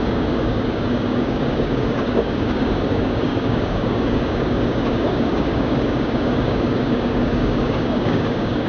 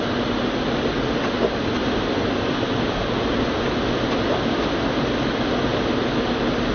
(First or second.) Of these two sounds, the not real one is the first